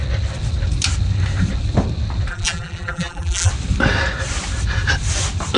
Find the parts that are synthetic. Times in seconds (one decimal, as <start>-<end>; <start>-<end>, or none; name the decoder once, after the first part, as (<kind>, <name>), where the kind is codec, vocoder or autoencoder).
2.3-3.5 (vocoder, BigVGAN v2)